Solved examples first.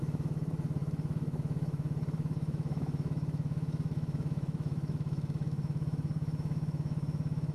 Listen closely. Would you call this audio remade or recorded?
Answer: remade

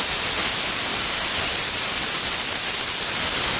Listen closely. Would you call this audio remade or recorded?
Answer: recorded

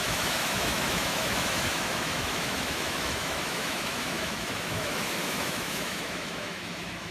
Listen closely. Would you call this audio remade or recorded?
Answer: remade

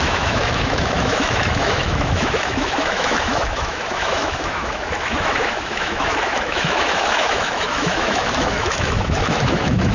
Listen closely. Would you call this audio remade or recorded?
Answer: remade